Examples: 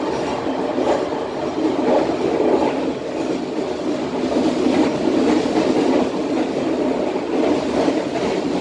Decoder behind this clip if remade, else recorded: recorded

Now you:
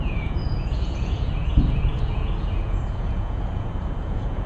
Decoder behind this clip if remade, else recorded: remade, vocoder, Vocos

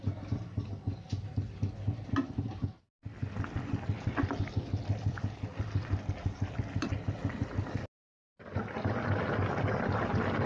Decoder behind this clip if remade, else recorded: recorded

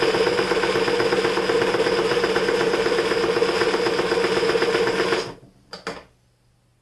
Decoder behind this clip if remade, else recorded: recorded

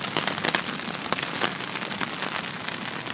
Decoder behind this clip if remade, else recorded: recorded